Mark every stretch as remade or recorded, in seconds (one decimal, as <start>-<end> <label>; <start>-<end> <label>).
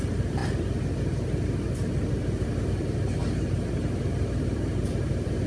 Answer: 0.0-0.4 remade; 0.4-2.4 recorded; 2.4-3.2 remade; 3.2-4.2 recorded; 4.2-5.5 remade